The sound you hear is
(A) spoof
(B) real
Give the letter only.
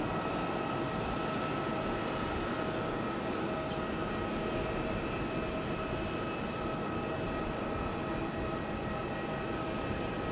B